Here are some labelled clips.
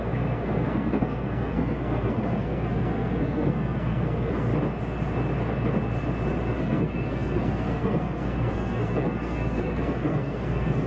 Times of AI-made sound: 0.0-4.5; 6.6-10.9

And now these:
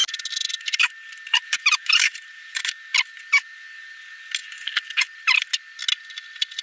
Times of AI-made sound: 1.3-2.6

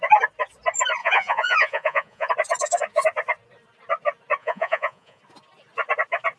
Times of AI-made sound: 1.0-2.3; 4.4-5.2